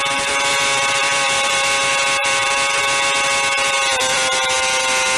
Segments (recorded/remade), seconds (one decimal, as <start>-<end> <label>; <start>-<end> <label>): 0.0-0.5 recorded; 0.5-1.5 remade; 1.5-2.2 recorded; 2.2-2.8 remade; 2.8-5.2 recorded